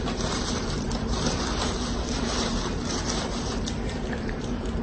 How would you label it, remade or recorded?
remade